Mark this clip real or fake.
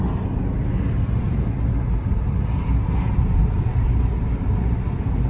real